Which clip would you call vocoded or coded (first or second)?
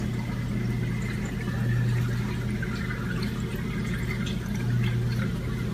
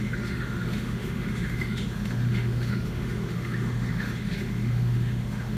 second